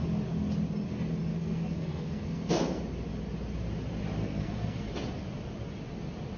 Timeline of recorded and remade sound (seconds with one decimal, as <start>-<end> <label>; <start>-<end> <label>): 0.0-1.3 recorded; 1.3-2.8 remade; 2.8-4.2 recorded; 4.2-4.9 remade; 4.9-6.4 recorded